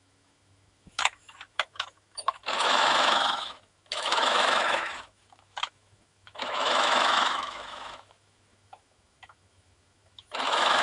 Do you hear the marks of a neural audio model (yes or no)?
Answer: yes